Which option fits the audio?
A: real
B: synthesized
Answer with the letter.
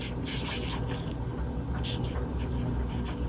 A